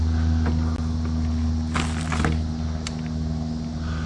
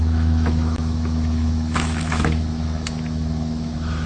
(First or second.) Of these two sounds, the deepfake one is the second